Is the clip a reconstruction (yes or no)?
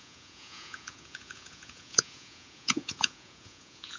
yes